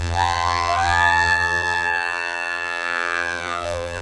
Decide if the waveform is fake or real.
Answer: fake